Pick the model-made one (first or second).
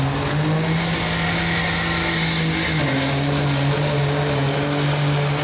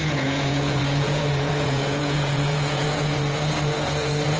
second